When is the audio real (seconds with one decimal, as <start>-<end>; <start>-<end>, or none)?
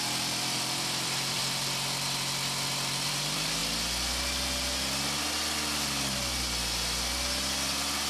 1.4-3.1; 3.6-8.1